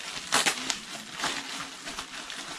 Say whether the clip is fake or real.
fake